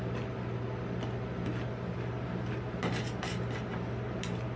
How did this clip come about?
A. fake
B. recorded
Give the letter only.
B